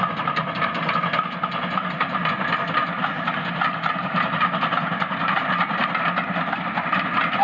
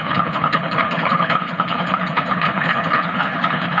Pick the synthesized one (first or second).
second